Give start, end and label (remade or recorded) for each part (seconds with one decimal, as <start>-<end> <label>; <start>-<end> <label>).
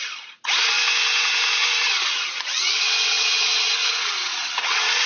0.0-1.6 recorded; 1.6-5.1 remade